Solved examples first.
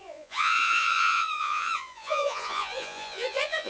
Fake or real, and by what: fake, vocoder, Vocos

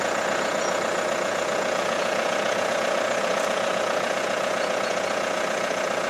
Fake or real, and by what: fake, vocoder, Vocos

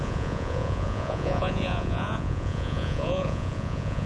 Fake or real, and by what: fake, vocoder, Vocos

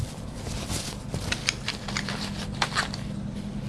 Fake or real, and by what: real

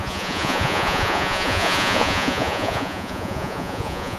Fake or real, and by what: fake, vocoder, Vocos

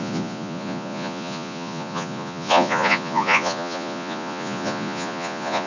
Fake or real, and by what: fake, vocoder, Vocos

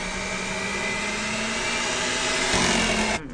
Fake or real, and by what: real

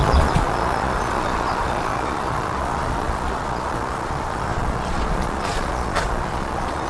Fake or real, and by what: fake, vocoder, Vocos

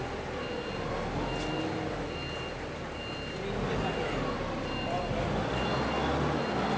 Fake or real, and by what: real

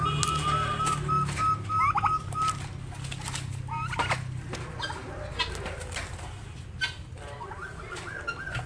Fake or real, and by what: real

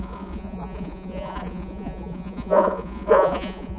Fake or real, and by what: fake, vocoder, Vocos